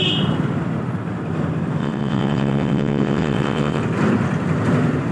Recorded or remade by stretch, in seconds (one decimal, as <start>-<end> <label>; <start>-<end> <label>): 0.0-1.8 recorded; 1.8-3.8 remade; 3.8-5.1 recorded